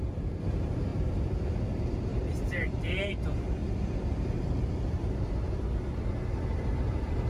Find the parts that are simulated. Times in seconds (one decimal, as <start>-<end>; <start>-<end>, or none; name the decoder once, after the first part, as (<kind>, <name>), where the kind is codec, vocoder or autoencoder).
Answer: 2.1-3.2 (vocoder, BigVGAN v2); 3.6-5.8